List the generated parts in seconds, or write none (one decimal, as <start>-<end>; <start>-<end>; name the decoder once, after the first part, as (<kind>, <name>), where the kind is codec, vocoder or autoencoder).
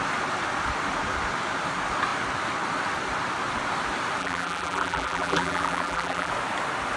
4.2-6.3 (vocoder, BigVGAN v2)